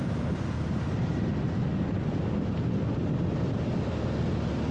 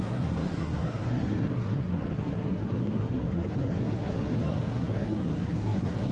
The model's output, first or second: second